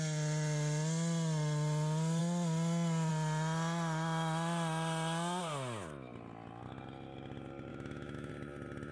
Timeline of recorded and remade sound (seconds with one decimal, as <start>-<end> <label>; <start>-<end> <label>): 0.0-7.7 recorded; 7.7-8.3 remade; 8.3-8.9 recorded